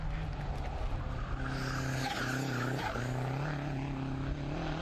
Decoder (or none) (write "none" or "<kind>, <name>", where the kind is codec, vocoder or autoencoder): none